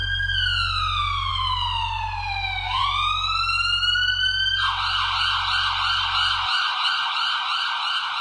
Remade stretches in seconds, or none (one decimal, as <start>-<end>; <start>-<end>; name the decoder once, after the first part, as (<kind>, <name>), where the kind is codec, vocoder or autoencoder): none